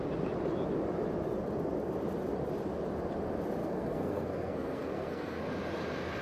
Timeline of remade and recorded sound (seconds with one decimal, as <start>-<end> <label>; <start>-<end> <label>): 0.0-3.6 recorded; 3.6-5.4 remade; 5.4-6.2 recorded